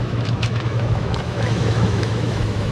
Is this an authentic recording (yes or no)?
no